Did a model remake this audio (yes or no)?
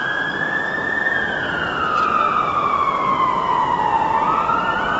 yes